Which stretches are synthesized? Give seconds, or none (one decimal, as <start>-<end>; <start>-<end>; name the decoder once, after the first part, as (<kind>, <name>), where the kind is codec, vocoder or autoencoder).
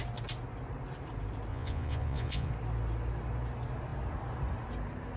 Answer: 1.5-2.5 (vocoder, Vocos)